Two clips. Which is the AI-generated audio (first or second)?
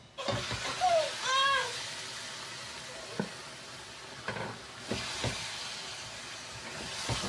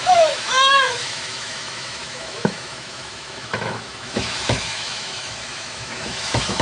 second